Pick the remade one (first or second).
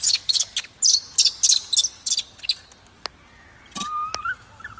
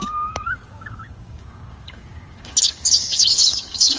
second